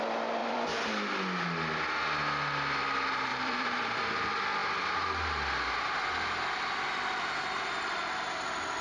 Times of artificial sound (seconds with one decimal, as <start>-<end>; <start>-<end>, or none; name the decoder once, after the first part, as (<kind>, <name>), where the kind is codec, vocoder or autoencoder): 0.4-0.9 (vocoder, BigVGAN v2); 3.3-4.0